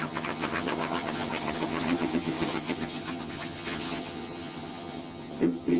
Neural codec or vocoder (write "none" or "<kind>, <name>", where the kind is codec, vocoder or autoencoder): vocoder, HiFi-GAN